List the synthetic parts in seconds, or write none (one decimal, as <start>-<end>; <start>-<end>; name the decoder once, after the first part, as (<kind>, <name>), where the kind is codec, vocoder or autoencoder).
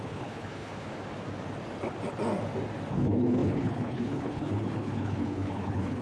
0.0-0.9 (codec, HILCodec); 2.9-6.0